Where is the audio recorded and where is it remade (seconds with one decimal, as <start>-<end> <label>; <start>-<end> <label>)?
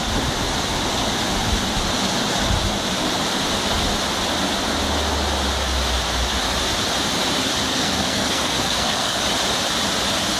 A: 0.0-7.7 recorded; 7.7-9.2 remade; 9.2-10.4 recorded